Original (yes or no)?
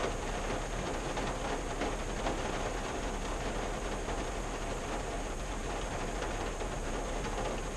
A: yes